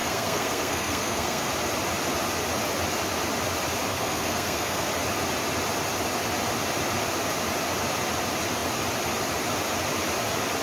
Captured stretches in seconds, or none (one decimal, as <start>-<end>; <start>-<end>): 1.5-3.9; 4.9-10.6